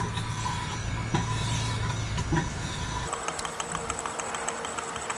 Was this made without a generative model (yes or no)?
yes